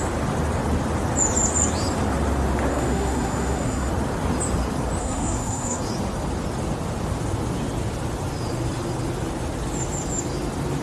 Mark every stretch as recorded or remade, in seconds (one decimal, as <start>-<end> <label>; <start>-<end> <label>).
0.0-2.7 recorded; 2.7-3.9 remade; 3.9-5.0 recorded; 5.0-5.8 remade; 5.8-10.8 recorded